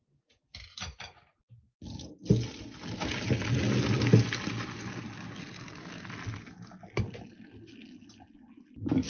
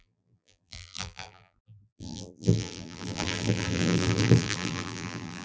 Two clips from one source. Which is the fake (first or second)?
second